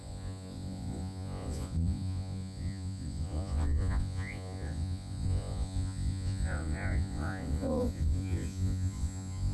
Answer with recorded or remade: remade